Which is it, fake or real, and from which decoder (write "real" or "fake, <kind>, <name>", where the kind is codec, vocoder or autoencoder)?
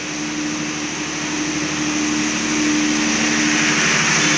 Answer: real